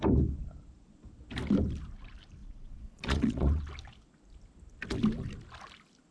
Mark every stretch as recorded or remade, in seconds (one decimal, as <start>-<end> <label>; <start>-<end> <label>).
0.0-2.4 recorded; 2.4-3.6 remade; 3.6-6.1 recorded